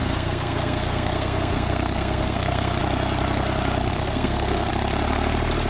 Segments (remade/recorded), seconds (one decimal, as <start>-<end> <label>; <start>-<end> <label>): 0.0-2.8 remade; 2.8-3.9 recorded; 3.9-4.7 remade; 4.7-5.7 recorded